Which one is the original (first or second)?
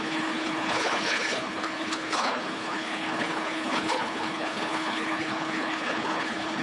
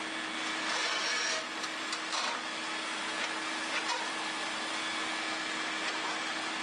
second